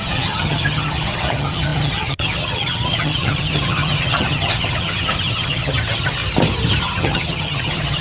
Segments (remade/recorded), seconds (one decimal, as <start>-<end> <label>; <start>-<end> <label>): 0.0-6.2 remade; 6.2-6.8 recorded; 6.8-8.0 remade